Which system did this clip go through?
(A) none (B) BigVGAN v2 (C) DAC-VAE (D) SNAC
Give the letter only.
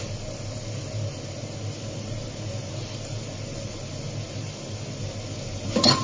A